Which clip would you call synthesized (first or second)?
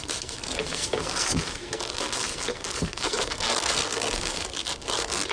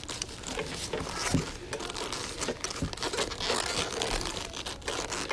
first